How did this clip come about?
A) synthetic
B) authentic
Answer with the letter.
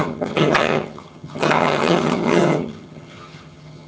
A